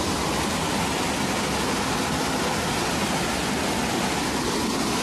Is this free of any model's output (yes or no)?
yes